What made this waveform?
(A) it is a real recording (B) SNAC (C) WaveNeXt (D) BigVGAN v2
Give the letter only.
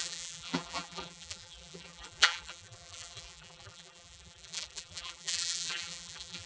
D